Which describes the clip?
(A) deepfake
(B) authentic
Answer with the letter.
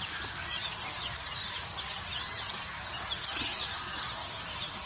B